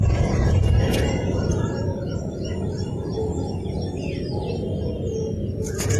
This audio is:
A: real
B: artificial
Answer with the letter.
B